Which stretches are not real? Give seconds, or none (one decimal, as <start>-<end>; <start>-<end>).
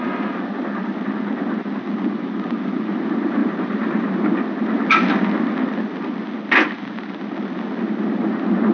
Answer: 3.4-4.1